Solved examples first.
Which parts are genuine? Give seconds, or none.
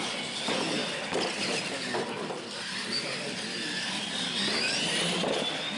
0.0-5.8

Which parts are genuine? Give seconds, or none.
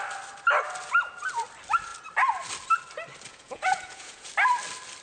0.0-3.3; 4.3-5.0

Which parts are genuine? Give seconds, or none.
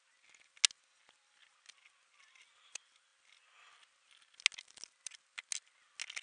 0.0-6.2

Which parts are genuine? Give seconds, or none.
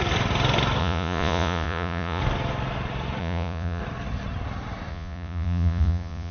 0.0-0.8; 2.2-3.2; 3.8-4.9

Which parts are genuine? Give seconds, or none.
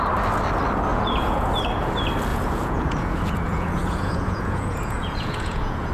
0.0-0.9; 1.5-2.3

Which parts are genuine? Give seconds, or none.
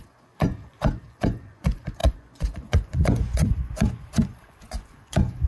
none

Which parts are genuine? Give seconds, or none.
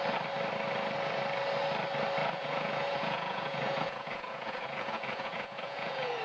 0.0-2.2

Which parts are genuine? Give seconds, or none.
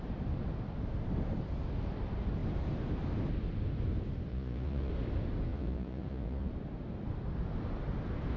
0.0-4.3; 4.9-5.5; 6.5-8.4